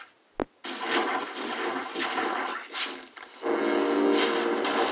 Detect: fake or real real